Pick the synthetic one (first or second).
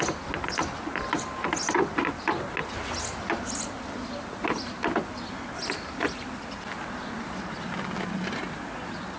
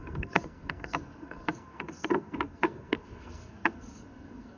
second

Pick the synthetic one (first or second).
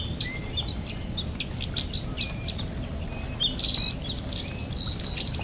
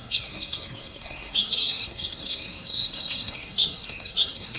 second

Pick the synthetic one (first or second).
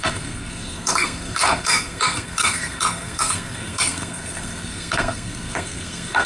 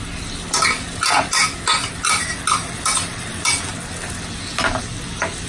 first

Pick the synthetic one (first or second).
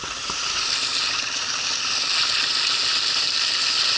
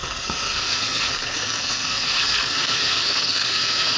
second